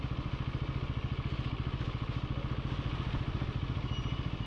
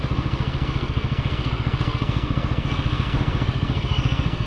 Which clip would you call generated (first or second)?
second